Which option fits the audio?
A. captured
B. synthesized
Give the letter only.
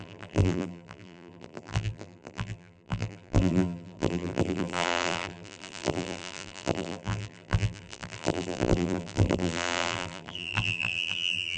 B